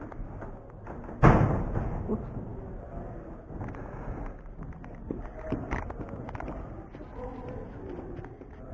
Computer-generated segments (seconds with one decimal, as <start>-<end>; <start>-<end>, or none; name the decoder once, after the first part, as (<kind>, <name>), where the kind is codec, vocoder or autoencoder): none